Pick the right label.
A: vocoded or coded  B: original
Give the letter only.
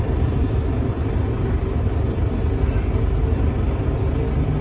B